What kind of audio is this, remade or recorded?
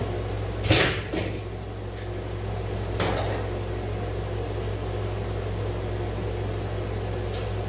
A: recorded